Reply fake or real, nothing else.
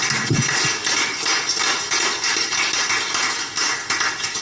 real